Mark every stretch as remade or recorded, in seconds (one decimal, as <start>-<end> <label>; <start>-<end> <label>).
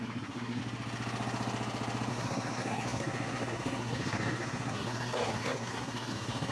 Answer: 0.0-0.6 remade; 0.6-2.1 recorded; 2.1-6.5 remade